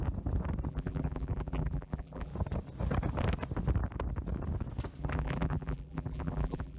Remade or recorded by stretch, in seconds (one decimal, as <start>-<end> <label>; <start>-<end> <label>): 0.0-0.7 recorded; 0.7-2.3 remade; 2.3-5.0 recorded; 5.0-6.8 remade